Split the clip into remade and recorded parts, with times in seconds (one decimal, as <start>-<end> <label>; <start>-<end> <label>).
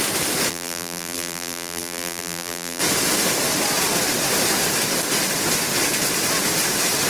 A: 0.0-0.5 recorded; 0.5-2.8 remade; 2.8-7.1 recorded